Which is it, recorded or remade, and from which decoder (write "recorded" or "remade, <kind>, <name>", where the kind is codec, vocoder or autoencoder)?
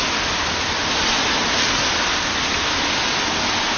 recorded